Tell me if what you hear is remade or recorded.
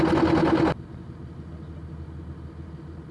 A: recorded